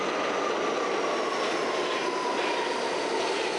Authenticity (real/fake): real